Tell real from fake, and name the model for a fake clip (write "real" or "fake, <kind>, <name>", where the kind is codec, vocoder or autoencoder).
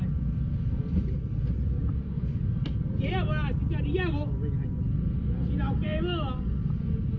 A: real